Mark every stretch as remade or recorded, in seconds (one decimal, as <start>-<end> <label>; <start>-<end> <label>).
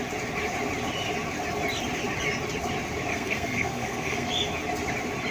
0.0-3.1 recorded; 3.1-4.3 remade; 4.3-5.3 recorded